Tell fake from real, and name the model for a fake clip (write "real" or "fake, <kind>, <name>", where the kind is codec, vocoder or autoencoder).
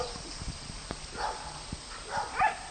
real